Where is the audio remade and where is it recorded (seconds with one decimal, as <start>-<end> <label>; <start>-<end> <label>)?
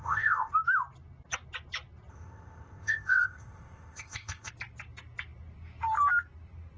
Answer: 0.0-0.5 remade; 0.5-2.1 recorded; 2.1-4.5 remade; 4.5-6.8 recorded